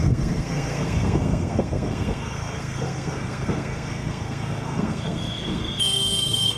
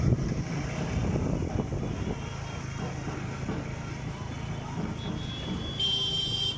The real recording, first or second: second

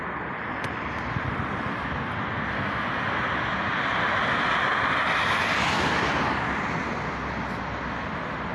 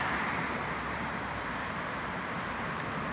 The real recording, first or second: first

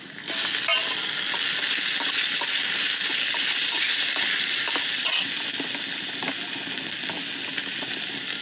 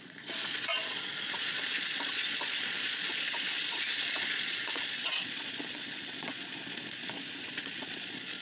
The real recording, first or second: first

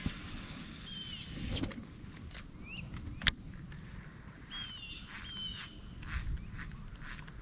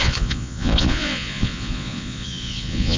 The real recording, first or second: first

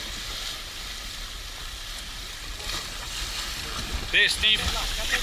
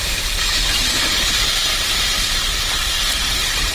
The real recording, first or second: first